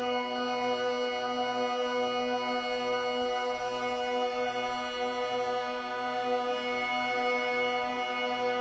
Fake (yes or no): no